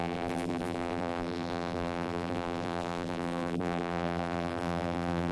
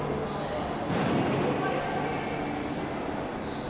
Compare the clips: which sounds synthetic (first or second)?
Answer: first